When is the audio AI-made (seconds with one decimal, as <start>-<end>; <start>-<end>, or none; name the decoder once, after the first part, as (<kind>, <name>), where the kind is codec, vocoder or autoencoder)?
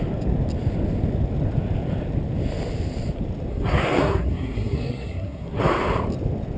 3.5-5.6 (codec, SNAC)